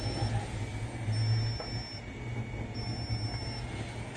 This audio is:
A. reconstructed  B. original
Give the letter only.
B